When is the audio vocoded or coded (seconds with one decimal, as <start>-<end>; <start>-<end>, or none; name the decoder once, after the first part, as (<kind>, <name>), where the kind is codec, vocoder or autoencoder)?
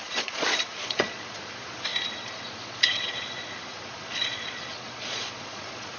0.0-6.0 (vocoder, Vocos)